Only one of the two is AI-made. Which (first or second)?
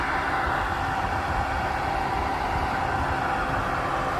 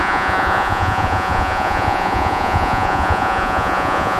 second